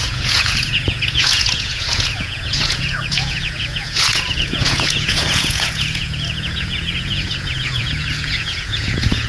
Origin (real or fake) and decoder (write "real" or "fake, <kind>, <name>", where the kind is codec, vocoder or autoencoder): fake, vocoder, Vocos